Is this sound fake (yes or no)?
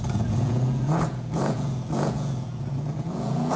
yes